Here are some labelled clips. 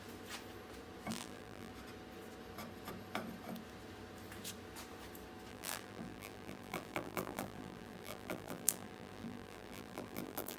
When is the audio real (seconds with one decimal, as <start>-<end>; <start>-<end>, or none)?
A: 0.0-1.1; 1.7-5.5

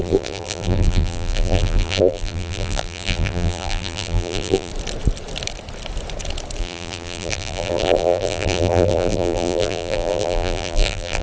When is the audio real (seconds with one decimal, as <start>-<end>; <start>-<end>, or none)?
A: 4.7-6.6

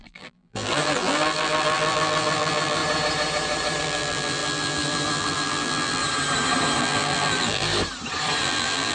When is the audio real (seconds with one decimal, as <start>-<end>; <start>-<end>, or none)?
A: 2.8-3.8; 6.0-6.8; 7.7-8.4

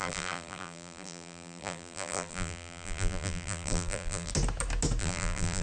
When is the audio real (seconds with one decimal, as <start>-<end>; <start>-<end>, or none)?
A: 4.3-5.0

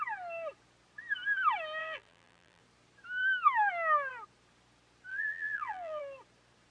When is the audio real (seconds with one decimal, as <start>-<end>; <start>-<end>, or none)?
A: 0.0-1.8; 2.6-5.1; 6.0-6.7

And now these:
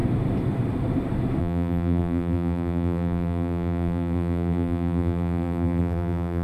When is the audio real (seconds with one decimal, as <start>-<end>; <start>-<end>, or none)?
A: 0.0-1.4

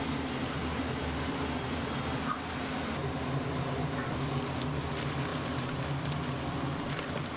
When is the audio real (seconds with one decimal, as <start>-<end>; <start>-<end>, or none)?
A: 0.0-5.3